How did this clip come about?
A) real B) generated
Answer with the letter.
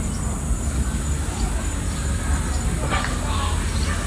A